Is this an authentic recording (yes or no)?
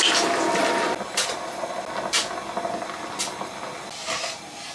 yes